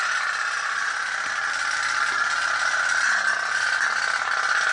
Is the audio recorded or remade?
recorded